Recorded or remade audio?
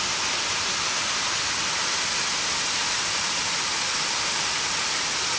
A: recorded